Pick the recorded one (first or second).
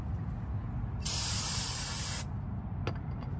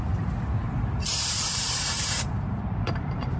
first